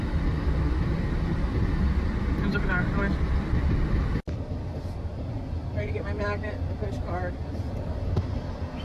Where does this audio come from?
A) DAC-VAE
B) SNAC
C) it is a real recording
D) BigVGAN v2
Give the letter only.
C